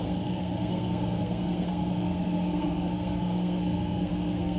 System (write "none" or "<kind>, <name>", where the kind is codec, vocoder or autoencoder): codec, SNAC